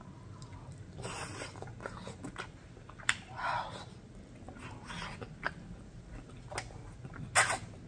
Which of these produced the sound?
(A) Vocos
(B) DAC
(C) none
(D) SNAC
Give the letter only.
C